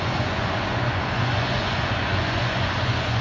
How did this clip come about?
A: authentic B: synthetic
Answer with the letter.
B